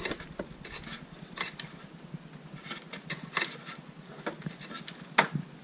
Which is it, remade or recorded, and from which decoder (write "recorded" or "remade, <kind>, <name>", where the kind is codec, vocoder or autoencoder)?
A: recorded